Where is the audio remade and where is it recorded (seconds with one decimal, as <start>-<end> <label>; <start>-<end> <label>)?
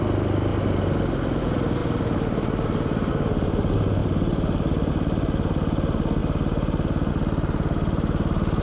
0.0-1.8 recorded; 1.8-3.1 remade; 3.1-8.6 recorded